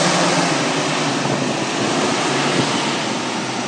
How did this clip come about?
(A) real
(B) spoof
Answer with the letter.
A